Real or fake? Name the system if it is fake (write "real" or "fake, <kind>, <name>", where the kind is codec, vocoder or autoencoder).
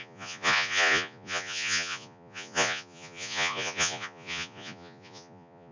fake, vocoder, Vocos